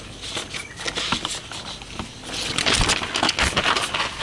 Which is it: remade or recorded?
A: recorded